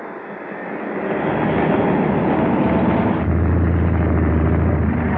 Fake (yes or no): no